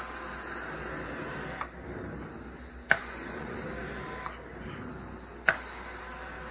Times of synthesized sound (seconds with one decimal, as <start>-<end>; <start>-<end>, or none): 3.0-3.6